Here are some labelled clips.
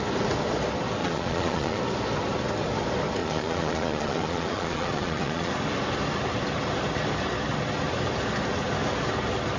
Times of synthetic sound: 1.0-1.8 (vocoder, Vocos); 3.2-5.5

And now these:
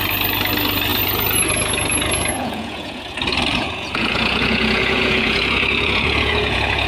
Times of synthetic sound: 0.9-3.0 (vocoder, Vocos); 3.5-6.9